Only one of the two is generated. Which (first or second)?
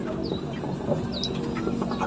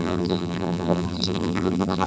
second